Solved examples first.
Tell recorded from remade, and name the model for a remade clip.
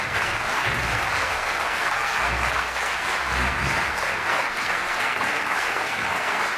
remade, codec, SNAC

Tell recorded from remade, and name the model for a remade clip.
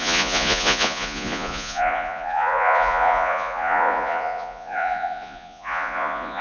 remade, vocoder, Vocos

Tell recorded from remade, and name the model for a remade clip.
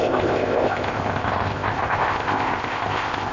remade, codec, ZipCodec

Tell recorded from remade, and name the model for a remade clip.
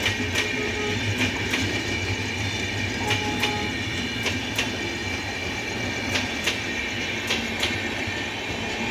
recorded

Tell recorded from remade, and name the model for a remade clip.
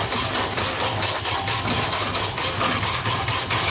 recorded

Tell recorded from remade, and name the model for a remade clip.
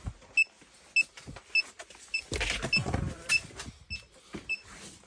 recorded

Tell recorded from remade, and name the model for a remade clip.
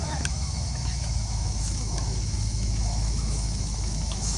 remade, autoencoder, DAC-VAE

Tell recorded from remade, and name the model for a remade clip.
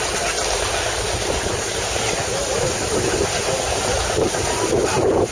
recorded